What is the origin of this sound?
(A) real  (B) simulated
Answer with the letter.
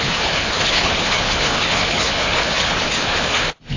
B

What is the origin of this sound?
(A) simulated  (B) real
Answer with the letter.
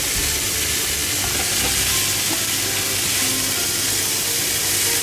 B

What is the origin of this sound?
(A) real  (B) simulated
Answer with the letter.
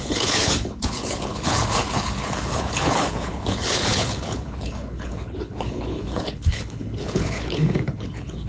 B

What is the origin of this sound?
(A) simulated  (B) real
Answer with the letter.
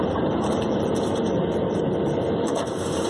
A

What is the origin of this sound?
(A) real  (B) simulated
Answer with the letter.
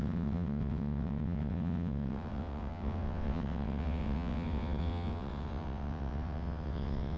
B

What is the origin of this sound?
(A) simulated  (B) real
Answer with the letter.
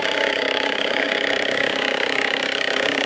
A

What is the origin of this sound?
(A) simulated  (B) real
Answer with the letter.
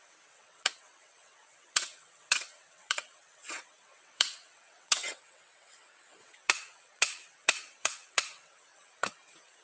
A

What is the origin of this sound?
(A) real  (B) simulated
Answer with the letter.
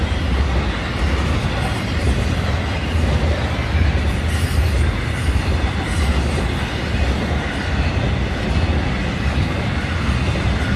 A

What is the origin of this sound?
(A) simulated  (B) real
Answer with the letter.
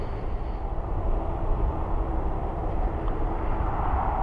A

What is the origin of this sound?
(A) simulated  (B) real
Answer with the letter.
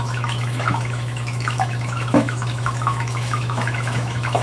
A